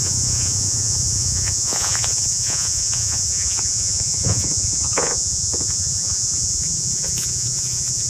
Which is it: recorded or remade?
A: remade